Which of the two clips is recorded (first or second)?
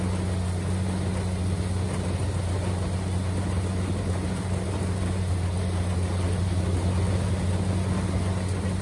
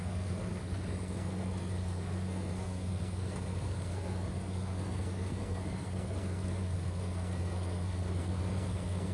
first